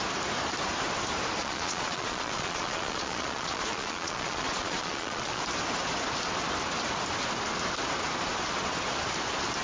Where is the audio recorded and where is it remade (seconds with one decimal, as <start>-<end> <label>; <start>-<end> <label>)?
0.0-1.4 recorded; 1.4-5.4 remade; 5.4-9.6 recorded